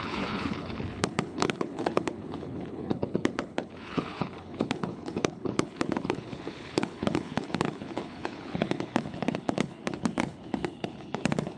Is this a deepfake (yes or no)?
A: yes